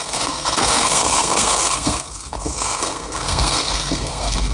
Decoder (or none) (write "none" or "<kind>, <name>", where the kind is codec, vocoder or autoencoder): codec, SNAC